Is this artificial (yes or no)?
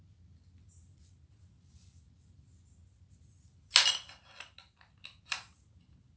no